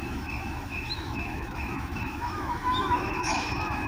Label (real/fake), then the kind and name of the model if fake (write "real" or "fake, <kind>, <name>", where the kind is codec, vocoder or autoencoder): fake, autoencoder, DAC-VAE